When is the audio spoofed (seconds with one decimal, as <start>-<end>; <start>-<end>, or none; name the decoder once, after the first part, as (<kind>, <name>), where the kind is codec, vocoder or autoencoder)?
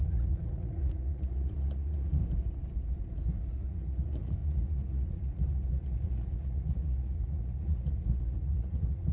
0.0-2.2 (vocoder, Vocos); 3.5-9.1